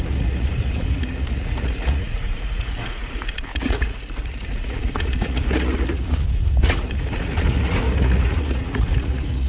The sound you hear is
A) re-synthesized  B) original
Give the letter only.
A